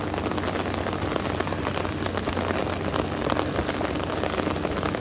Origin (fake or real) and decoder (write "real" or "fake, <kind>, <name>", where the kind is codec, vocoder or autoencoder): real